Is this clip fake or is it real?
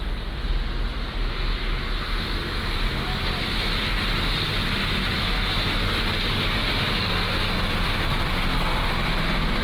real